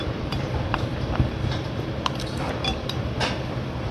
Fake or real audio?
fake